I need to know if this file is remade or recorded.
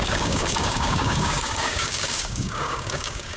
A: remade